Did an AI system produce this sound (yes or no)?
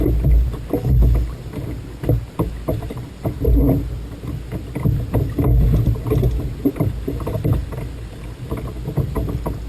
no